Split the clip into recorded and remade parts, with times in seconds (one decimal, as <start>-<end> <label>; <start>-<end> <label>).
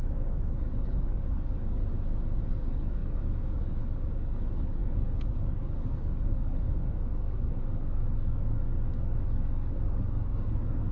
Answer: 0.0-1.8 remade; 1.8-2.5 recorded; 2.5-10.9 remade